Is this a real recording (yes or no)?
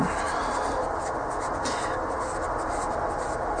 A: yes